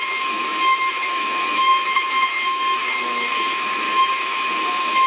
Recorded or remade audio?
remade